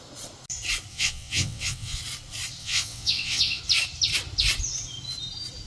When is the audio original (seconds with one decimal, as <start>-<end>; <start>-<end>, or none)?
0.0-0.9; 2.0-2.6; 3.6-5.7